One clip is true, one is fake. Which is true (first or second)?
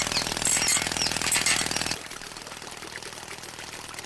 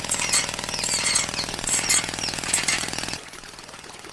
first